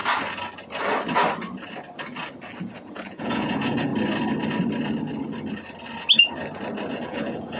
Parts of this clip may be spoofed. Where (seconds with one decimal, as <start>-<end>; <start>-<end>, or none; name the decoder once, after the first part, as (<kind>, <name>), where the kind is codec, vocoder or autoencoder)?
2.6-3.9 (vocoder, Vocos); 6.9-7.6